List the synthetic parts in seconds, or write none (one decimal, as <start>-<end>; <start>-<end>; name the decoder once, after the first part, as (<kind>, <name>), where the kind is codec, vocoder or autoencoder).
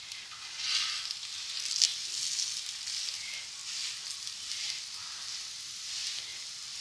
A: none